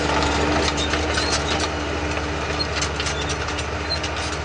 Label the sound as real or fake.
real